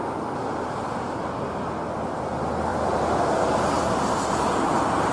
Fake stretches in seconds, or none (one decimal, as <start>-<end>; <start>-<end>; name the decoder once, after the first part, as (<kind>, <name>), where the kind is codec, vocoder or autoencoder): none